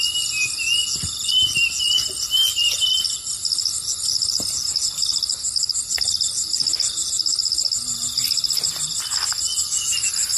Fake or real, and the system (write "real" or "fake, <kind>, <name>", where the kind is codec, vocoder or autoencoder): real